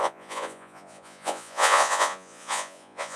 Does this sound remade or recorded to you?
remade